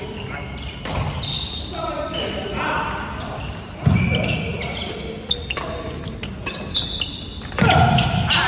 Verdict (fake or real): real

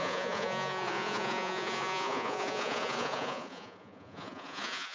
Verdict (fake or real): fake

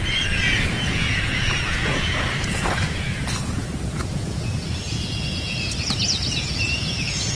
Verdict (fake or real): fake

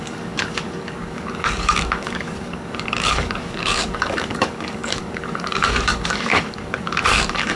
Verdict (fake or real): fake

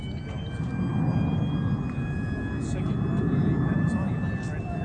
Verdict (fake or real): real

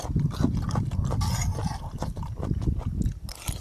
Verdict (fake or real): real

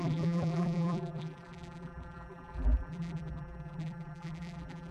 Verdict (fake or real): fake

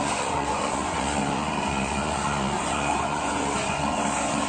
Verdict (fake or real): fake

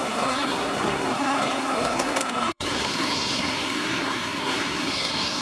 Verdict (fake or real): fake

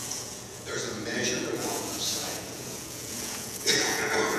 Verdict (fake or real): fake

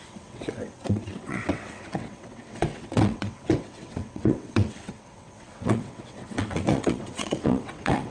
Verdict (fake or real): fake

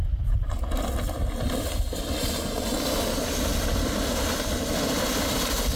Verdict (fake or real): real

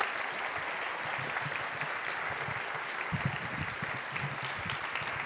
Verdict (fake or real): real